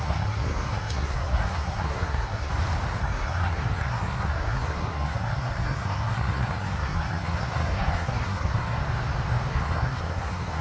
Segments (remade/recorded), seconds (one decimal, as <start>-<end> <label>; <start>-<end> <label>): 0.0-2.5 remade; 2.5-3.0 recorded; 3.0-8.8 remade; 8.8-9.5 recorded; 9.5-10.6 remade